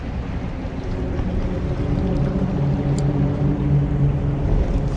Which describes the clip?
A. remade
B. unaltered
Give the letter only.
B